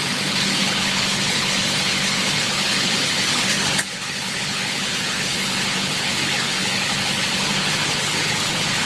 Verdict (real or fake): fake